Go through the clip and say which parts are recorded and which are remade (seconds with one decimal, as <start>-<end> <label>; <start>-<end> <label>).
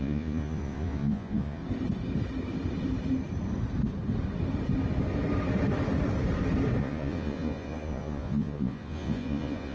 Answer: 0.0-1.6 remade; 1.6-6.8 recorded; 6.8-9.7 remade